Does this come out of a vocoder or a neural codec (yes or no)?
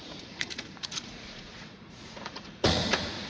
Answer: yes